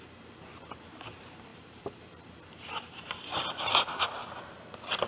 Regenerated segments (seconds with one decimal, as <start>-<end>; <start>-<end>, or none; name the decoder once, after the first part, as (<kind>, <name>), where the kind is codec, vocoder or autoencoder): 0.0-4.2 (vocoder, BigVGAN v2)